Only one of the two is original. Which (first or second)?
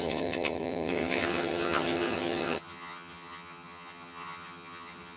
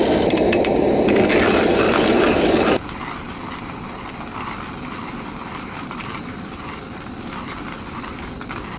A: second